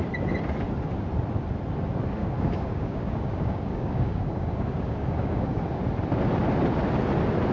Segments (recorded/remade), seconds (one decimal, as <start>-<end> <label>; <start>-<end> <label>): 0.0-2.2 recorded; 2.2-5.6 remade; 5.6-7.5 recorded